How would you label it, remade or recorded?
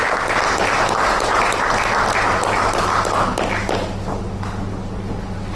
recorded